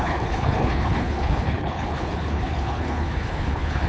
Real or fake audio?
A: fake